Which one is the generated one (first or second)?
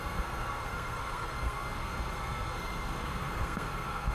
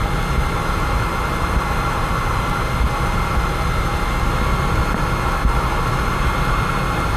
first